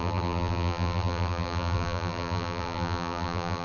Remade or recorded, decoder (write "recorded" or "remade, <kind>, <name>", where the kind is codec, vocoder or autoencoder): remade, vocoder, BigVGAN v2